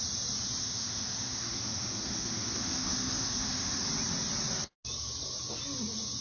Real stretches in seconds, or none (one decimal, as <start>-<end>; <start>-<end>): 0.0-0.6; 3.9-6.2